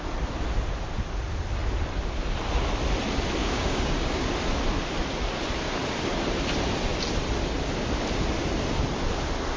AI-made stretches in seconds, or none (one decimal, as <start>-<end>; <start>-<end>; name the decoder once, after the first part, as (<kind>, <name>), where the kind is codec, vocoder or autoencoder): 3.4-4.3 (codec, DAC)